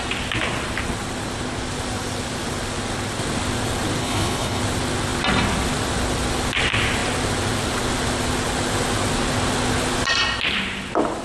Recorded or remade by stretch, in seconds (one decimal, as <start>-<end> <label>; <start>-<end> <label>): 0.0-4.0 recorded; 4.0-4.6 remade; 4.6-11.2 recorded